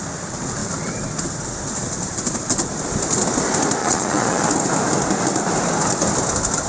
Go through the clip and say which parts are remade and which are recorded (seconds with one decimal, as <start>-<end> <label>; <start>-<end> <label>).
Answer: 0.0-3.8 recorded; 3.8-4.5 remade; 4.5-6.7 recorded